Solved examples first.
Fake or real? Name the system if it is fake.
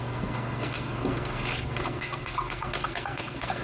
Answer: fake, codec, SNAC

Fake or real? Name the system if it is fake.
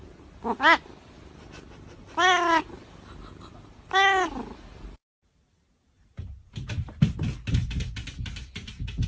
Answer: real